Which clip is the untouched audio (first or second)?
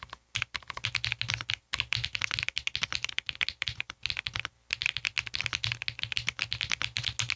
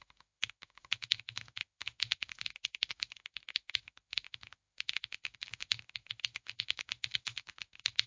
first